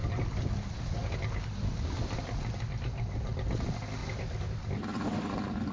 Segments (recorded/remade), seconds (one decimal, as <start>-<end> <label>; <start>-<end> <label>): 0.0-5.7 recorded